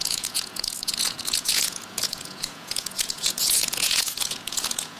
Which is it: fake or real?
fake